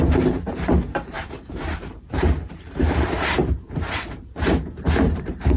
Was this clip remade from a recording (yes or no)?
yes